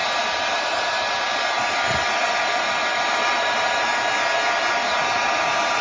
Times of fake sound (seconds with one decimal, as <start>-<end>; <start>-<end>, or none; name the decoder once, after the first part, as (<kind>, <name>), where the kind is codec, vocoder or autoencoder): 0.0-3.9 (vocoder, BigVGAN v2); 4.6-5.8